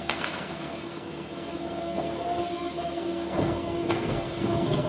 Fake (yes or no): yes